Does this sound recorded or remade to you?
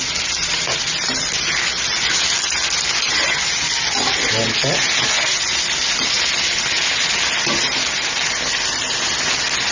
recorded